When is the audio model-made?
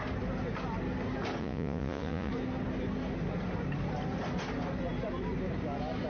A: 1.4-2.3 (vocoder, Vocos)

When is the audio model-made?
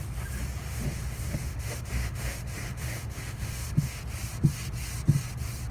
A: 0.6-4.0 (autoencoder, DAC-VAE)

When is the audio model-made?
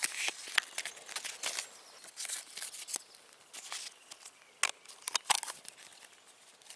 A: none